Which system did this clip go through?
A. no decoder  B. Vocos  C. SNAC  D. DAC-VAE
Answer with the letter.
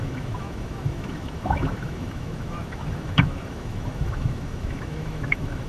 D